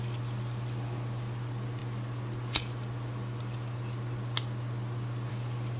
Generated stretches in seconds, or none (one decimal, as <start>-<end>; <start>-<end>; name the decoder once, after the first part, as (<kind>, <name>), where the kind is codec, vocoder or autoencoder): none